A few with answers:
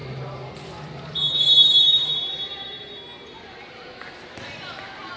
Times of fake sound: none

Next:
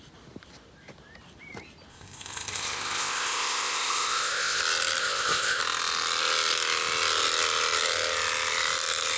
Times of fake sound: 1.9-4.6 (codec, ZipCodec); 5.0-5.6

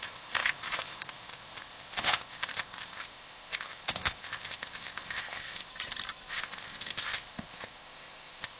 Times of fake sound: 0.0-5.7 (codec, ZipCodec); 6.3-8.6

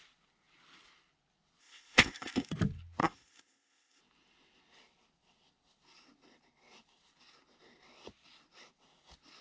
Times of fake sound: 1.6-2.5 (codec, ZipCodec); 3.0-4.0